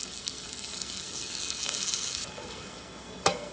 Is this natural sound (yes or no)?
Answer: no